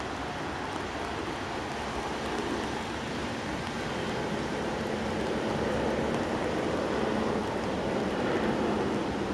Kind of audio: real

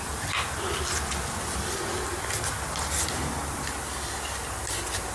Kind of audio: real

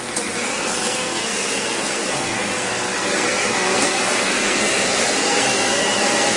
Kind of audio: fake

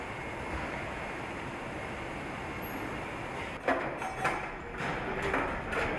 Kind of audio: real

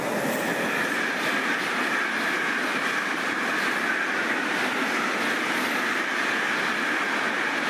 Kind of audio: real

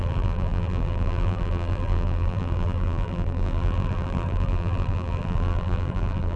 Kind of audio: fake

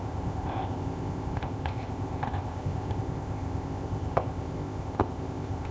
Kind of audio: fake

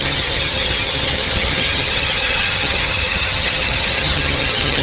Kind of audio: fake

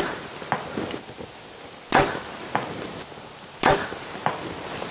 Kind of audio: real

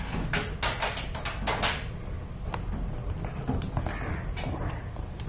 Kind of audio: real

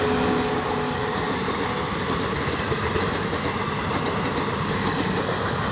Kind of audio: real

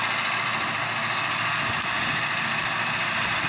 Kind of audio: real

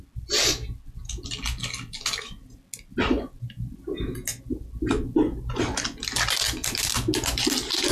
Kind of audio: real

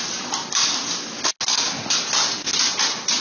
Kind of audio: real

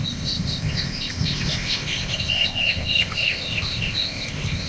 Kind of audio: fake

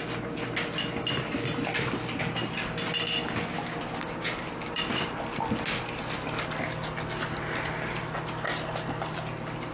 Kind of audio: real